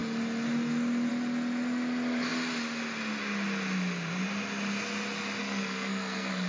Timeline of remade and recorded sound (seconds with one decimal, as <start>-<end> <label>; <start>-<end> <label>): 0.0-5.4 recorded; 5.4-6.5 remade